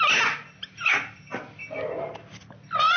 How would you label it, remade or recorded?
recorded